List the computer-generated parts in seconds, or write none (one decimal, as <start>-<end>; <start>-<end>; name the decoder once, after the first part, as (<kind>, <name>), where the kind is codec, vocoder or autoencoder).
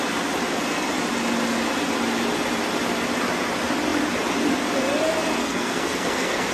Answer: 5.4-6.5 (codec, SNAC)